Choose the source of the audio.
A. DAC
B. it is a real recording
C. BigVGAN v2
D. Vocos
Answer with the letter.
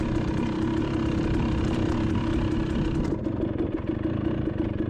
B